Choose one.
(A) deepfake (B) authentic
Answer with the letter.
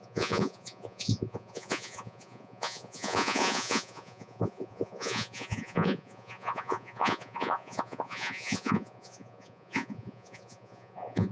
A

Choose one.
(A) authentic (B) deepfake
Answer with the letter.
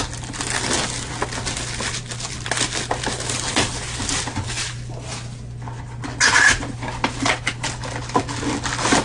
A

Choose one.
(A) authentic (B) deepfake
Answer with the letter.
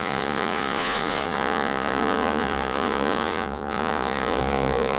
B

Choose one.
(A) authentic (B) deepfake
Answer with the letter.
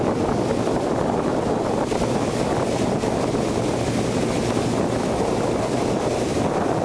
A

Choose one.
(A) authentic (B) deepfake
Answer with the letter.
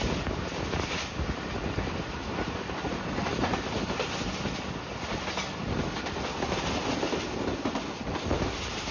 A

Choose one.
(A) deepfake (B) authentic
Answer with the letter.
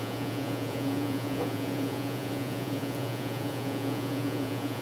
A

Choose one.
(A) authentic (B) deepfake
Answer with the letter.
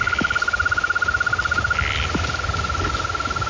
A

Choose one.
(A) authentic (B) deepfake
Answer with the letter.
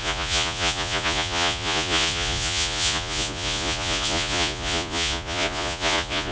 B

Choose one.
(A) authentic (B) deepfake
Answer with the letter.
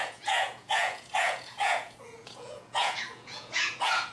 B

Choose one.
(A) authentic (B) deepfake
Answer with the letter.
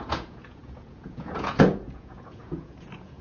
B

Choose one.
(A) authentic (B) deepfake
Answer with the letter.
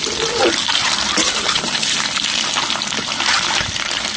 A